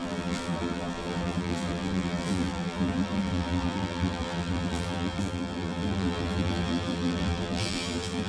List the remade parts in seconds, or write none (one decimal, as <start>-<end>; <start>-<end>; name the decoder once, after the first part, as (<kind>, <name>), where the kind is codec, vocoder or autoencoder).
0.0-8.3 (vocoder, BigVGAN v2)